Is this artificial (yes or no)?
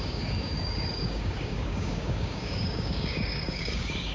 yes